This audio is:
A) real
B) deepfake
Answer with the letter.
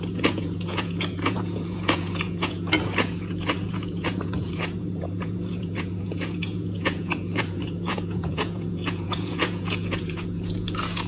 B